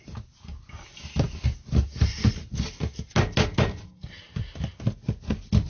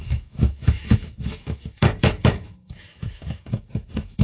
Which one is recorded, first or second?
first